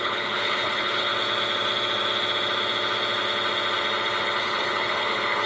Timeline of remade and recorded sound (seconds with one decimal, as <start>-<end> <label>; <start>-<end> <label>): 0.0-1.1 remade; 1.1-4.4 recorded; 4.4-5.5 remade